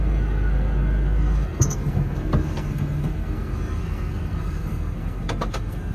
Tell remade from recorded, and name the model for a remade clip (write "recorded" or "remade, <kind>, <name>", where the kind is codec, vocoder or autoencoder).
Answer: remade, codec, SNAC